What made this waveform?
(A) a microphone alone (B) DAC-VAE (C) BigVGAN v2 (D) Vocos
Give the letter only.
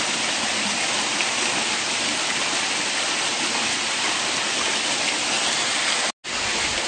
A